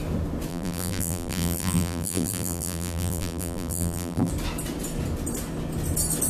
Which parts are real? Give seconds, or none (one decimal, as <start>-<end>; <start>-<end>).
0.0-0.5; 4.3-6.3